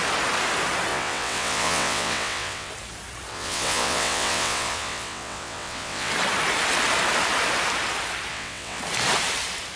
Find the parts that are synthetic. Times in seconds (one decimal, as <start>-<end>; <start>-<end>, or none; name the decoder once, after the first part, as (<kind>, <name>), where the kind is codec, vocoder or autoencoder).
0.9-2.7 (vocoder, WaveNeXt); 3.3-6.1; 8.3-8.8